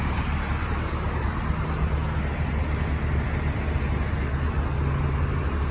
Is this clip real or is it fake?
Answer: real